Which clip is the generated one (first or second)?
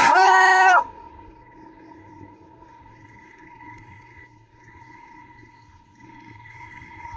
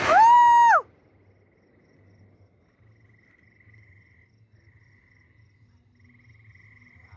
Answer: first